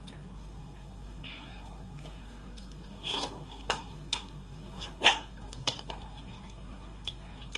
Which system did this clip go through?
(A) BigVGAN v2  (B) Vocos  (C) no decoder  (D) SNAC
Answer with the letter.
D